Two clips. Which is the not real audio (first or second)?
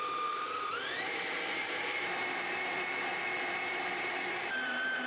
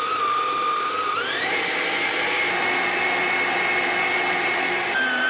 first